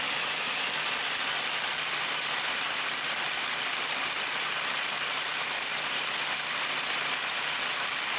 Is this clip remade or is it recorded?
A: recorded